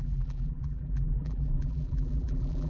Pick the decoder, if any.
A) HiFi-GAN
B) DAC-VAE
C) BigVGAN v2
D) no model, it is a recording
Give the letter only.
C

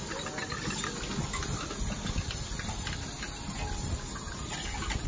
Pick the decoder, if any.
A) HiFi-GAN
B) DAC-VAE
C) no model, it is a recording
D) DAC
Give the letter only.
C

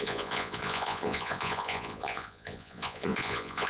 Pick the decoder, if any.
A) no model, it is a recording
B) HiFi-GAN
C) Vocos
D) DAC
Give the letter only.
C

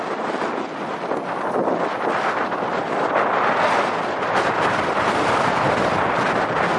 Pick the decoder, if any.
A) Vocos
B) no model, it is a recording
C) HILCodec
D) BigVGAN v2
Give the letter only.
B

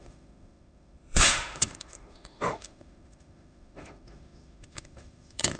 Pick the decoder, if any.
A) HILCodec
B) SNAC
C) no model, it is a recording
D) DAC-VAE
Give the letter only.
D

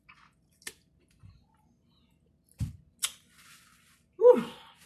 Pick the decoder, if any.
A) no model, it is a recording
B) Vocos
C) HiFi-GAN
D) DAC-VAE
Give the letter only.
A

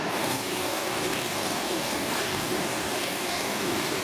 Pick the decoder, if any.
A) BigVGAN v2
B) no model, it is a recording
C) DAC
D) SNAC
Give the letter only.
C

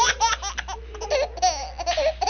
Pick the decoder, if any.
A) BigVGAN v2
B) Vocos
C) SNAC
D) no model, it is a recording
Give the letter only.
D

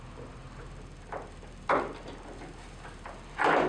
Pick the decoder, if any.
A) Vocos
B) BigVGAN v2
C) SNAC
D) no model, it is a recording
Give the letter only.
D